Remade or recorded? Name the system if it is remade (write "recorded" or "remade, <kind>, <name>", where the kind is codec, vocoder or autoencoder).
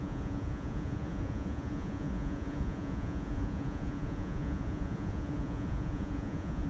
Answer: remade, vocoder, Vocos